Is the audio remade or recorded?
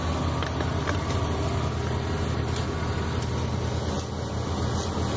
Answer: recorded